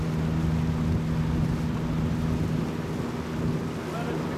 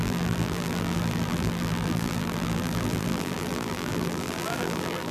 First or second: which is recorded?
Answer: first